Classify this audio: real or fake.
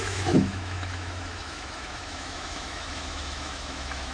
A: fake